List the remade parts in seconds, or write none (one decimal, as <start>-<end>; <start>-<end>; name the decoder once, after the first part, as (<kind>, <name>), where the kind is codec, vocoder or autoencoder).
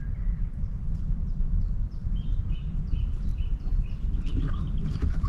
0.0-2.0 (vocoder, BigVGAN v2); 2.6-3.3; 3.9-4.3